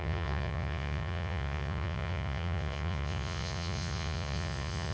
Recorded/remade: remade